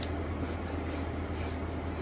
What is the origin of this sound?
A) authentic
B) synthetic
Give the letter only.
A